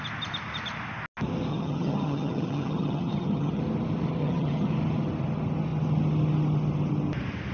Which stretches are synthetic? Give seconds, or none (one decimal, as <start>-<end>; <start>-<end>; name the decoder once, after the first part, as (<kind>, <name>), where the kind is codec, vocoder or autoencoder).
1.5-3.6 (vocoder, HiFi-GAN); 4.2-4.7